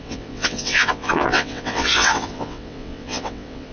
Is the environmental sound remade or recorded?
remade